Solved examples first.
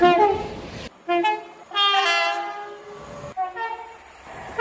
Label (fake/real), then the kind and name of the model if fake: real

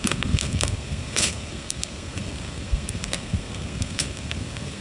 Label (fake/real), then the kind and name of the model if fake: fake, codec, SNAC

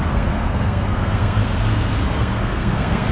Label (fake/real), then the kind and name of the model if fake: fake, codec, SNAC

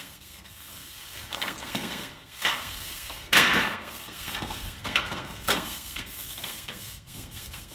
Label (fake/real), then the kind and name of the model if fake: fake, codec, SNAC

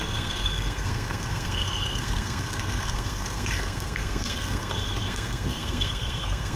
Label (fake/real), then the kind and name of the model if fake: fake, codec, SNAC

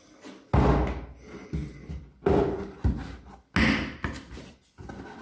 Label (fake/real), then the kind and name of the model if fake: real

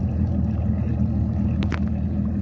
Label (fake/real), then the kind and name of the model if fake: real